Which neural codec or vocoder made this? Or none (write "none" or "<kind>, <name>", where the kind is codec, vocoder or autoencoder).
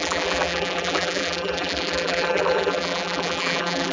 vocoder, BigVGAN v2